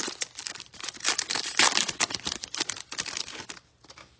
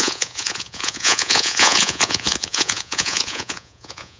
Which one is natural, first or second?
first